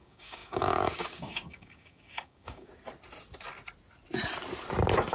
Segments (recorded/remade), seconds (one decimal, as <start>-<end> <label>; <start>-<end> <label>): 0.0-2.7 remade; 2.7-5.1 recorded